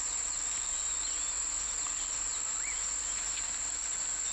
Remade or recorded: recorded